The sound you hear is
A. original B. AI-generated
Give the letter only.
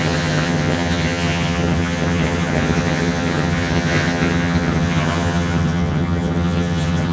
B